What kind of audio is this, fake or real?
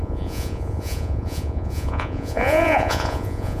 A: fake